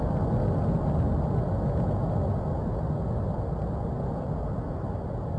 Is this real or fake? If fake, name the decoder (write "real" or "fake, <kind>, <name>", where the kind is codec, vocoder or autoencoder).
real